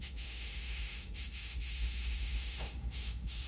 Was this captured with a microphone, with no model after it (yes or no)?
no